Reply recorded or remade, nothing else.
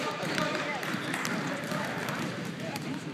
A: remade